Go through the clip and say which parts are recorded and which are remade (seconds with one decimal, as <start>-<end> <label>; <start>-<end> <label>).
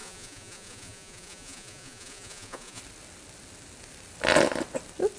0.0-2.8 remade; 2.8-5.2 recorded